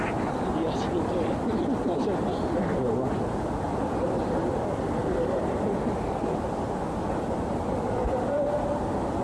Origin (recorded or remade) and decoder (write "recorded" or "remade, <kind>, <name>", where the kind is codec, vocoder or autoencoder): recorded